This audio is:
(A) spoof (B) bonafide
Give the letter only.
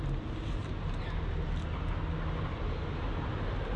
B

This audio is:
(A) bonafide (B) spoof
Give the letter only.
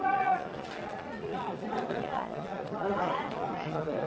B